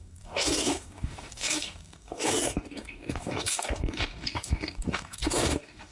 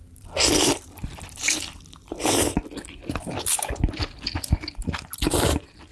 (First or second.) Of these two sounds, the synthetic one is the first